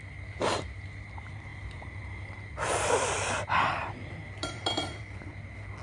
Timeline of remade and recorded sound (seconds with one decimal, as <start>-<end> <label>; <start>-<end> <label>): 0.0-1.5 recorded; 1.5-3.3 remade; 3.3-3.8 recorded; 3.8-5.3 remade; 5.3-5.8 recorded